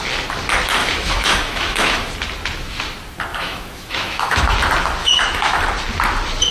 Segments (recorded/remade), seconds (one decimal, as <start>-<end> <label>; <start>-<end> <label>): 0.0-0.8 recorded; 0.8-2.1 remade; 2.1-3.3 recorded; 3.3-4.5 remade; 4.5-5.0 recorded; 5.0-5.6 remade; 5.6-6.5 recorded